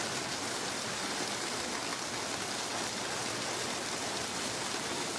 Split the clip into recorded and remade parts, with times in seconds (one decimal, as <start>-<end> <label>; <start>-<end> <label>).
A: 0.0-5.2 recorded